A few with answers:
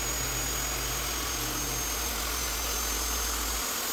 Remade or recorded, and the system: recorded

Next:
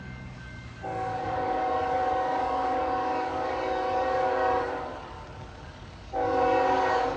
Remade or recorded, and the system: remade, codec, DAC